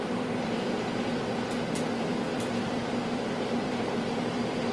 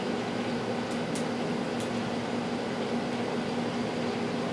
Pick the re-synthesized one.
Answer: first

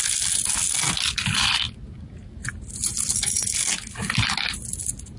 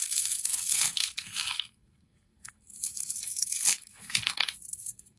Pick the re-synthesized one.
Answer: second